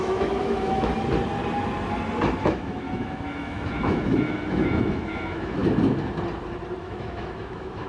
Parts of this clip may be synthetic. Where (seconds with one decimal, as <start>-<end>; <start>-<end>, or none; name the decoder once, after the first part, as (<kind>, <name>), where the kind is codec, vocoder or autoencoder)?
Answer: 0.0-0.9 (autoencoder, DAC-VAE); 2.4-5.6; 6.8-7.9